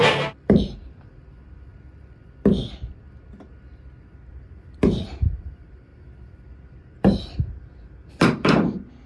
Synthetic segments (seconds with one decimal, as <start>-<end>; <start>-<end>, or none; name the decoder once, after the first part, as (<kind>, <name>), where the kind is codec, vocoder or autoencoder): 0.0-1.7 (vocoder, BigVGAN v2); 4.3-9.1